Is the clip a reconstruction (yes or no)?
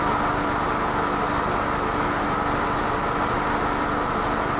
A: no